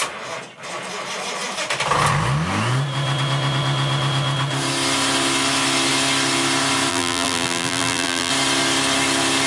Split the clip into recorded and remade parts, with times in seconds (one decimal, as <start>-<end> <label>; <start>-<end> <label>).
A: 0.0-6.9 recorded; 6.9-8.3 remade; 8.3-9.5 recorded